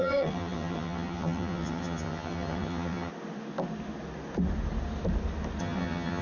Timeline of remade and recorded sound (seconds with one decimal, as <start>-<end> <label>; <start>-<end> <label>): 0.0-3.1 remade; 3.1-5.6 recorded; 5.6-6.2 remade